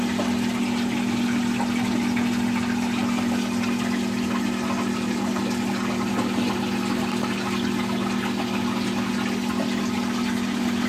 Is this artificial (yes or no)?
no